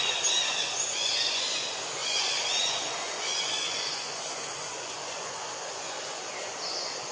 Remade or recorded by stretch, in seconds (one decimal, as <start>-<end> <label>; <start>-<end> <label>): 0.0-7.1 remade